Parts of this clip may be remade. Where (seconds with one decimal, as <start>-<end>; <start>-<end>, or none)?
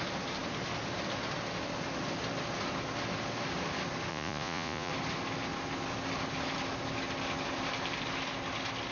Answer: 4.1-4.9